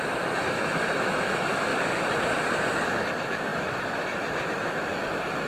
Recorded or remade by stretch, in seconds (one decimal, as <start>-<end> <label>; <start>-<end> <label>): 0.0-1.7 remade; 1.7-3.0 recorded; 3.0-5.5 remade